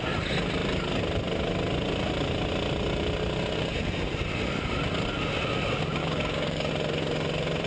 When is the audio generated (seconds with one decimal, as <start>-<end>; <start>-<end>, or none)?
6.0-6.7